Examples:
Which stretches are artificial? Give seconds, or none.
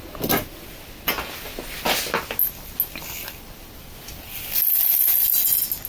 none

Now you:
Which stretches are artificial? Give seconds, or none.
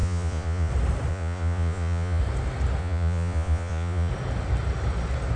0.0-0.7 (vocoder, Vocos); 1.1-2.2; 2.8-4.1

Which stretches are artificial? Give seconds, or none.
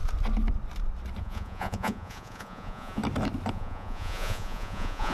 1.2-3.0 (vocoder, Vocos); 3.5-5.1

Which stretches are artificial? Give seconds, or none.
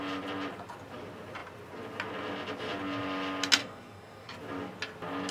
3.6-4.3 (codec, DAC)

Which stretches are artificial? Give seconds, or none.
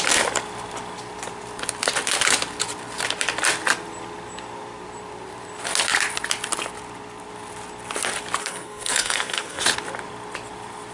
8.4-9.6 (codec, SNAC)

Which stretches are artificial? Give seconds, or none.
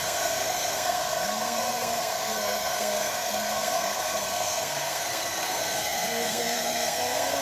0.0-7.4 (codec, SNAC)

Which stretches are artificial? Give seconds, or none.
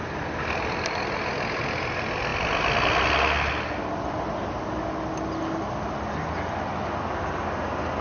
none